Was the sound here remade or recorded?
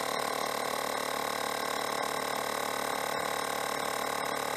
recorded